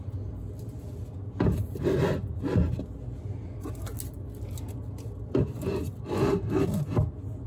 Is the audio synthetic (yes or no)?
no